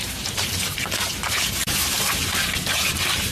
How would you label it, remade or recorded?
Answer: remade